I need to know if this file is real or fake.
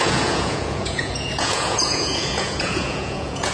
fake